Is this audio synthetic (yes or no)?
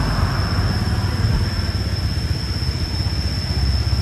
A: no